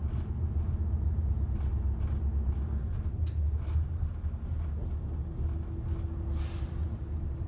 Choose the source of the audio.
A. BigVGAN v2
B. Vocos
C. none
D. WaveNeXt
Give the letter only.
C